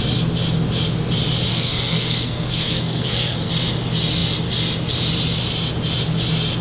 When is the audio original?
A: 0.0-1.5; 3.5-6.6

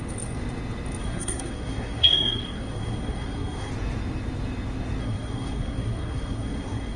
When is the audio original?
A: 0.0-1.0; 3.7-5.0

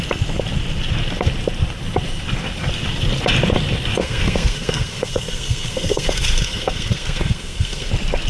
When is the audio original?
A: 0.0-4.0; 7.9-8.3

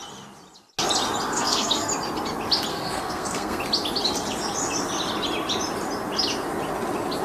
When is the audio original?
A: 0.0-1.3; 1.9-2.7; 3.6-7.2

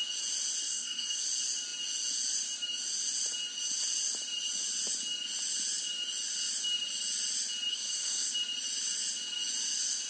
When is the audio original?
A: 0.0-0.6; 1.2-7.7; 8.3-10.1

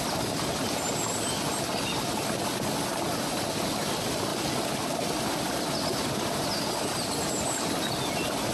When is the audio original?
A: 0.0-8.5